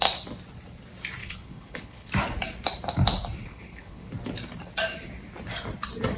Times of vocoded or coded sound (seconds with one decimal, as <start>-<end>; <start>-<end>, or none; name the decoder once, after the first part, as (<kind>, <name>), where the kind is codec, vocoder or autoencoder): 1.2-2.1 (codec, HILCodec); 3.4-4.1